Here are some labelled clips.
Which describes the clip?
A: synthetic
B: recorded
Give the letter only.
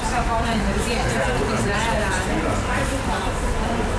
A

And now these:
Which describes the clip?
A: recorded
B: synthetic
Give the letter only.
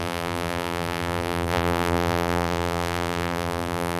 B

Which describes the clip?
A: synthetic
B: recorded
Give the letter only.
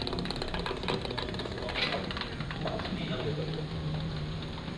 A